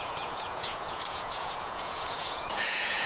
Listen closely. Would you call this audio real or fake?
fake